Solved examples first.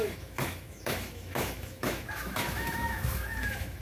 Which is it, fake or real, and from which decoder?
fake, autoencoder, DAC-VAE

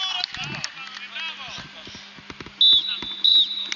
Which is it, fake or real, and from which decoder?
real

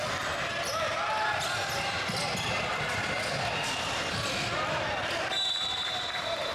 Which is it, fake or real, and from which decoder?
real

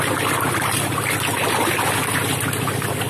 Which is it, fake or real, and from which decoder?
real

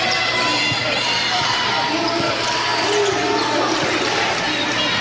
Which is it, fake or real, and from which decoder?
real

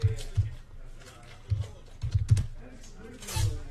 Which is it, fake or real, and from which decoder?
real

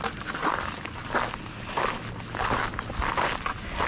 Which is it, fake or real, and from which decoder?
real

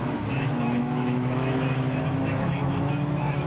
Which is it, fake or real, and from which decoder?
fake, autoencoder, DAC-VAE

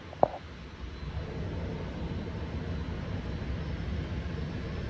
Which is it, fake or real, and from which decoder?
real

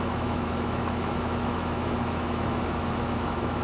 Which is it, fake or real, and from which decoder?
fake, autoencoder, DAC-VAE